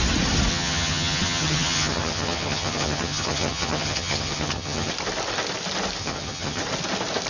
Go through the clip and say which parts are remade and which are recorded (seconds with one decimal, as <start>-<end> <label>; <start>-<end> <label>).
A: 0.0-0.5 recorded; 0.5-4.9 remade; 4.9-6.0 recorded; 6.0-6.6 remade; 6.6-7.3 recorded